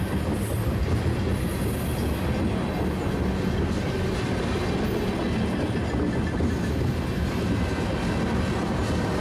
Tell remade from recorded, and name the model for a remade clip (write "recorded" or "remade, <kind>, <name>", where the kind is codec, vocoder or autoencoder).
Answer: recorded